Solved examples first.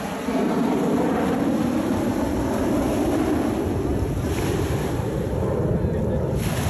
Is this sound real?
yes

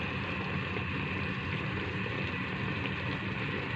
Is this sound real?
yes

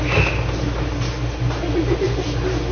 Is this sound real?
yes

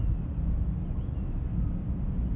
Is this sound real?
yes